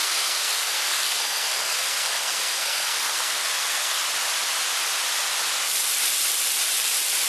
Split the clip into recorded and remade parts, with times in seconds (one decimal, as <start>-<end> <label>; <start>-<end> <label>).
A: 0.0-4.0 remade; 4.0-7.3 recorded